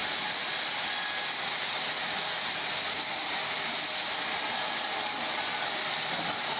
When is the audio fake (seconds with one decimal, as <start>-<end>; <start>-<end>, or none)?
none